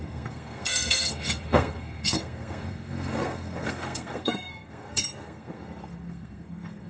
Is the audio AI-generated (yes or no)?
yes